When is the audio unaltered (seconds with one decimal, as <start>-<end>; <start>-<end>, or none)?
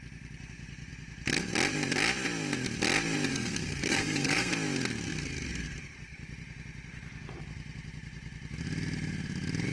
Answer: 0.0-3.3; 4.5-9.7